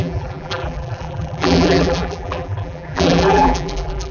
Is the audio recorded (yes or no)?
no